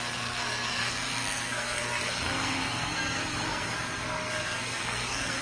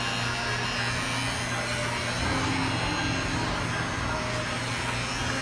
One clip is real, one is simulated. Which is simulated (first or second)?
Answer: first